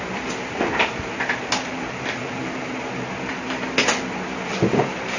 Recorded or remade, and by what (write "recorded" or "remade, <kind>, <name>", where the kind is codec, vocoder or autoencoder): recorded